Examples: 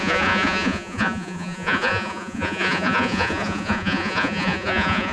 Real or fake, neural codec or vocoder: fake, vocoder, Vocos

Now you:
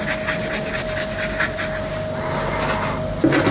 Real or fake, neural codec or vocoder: real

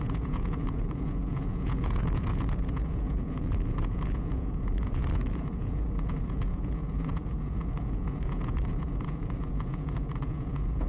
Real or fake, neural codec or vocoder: fake, vocoder, Vocos